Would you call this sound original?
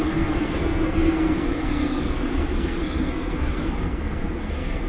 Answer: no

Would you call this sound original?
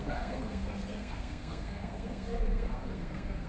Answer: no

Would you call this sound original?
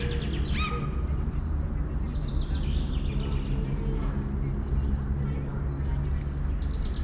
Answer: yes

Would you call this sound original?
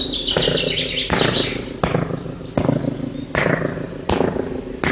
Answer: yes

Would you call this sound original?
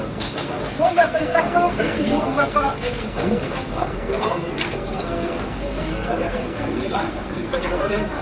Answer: no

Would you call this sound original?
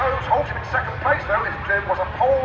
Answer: yes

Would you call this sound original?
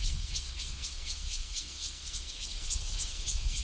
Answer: no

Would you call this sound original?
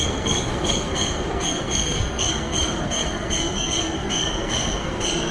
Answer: no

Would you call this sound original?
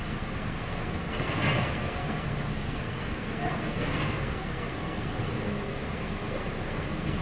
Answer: no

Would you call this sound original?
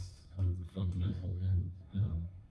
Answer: no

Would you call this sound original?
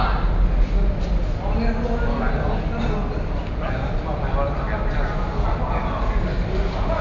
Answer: yes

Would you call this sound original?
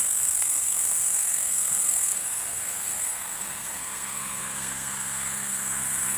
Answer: no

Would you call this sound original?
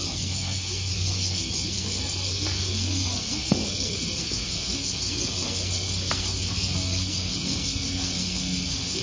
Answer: no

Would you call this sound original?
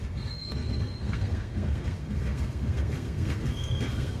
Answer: no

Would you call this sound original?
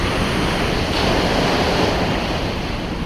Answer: yes